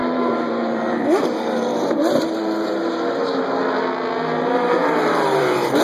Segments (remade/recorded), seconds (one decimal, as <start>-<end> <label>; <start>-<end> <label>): 0.0-3.5 remade; 3.5-4.8 recorded; 4.8-5.8 remade